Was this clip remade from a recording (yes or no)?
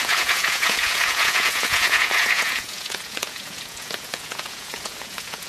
yes